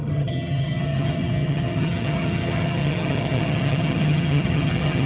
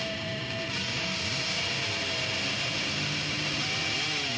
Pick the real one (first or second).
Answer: second